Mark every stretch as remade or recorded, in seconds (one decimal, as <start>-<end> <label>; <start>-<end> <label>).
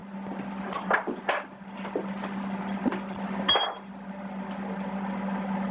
0.0-5.7 recorded